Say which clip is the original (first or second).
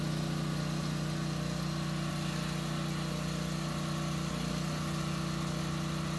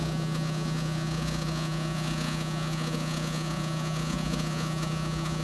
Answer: first